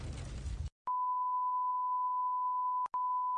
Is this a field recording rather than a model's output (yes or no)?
yes